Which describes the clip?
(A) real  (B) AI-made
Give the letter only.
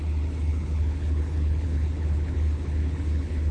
B